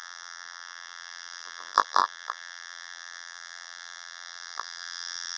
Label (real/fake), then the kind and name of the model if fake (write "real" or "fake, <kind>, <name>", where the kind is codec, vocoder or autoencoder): fake, vocoder, BigVGAN v2